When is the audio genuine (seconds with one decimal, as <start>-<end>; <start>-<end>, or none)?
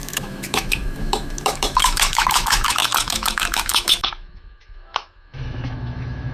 none